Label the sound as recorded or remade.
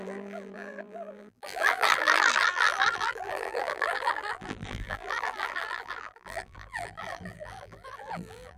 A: remade